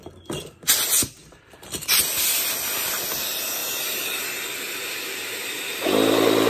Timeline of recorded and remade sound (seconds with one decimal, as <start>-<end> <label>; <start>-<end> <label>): 0.0-6.5 recorded